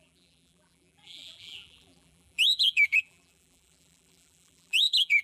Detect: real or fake fake